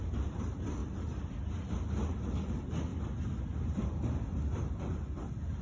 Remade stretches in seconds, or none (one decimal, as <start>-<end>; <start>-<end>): 0.0-0.8; 2.5-2.9; 3.5-5.6